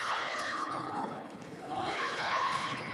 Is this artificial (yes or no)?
yes